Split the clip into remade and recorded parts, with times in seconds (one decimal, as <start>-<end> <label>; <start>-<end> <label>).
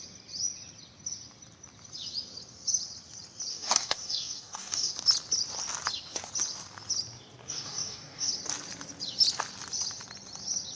0.0-3.5 recorded; 3.5-4.9 remade; 4.9-7.4 recorded; 7.4-8.3 remade; 8.3-10.7 recorded